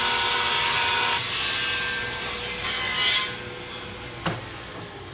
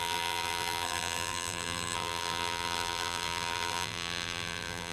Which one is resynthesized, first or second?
second